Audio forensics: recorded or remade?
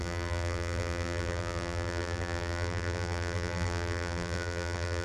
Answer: remade